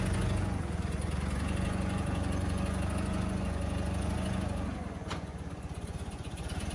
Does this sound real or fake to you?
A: fake